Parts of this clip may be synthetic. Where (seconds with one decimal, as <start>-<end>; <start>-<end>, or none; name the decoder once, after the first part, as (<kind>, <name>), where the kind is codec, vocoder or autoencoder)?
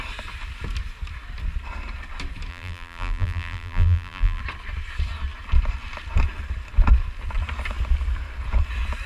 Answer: 2.5-4.4 (vocoder, BigVGAN v2)